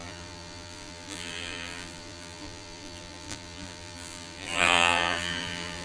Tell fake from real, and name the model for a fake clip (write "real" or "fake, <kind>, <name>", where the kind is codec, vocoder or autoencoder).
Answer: fake, vocoder, BigVGAN v2